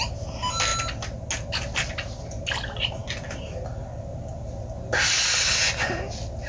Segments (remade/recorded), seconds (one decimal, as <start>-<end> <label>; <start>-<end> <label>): 0.0-6.5 recorded